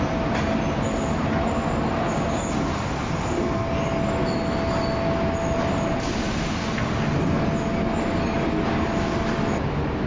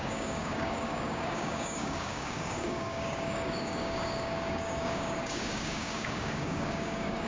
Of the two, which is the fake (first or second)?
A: second